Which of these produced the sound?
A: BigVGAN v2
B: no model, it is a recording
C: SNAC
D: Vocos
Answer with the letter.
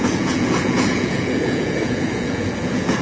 D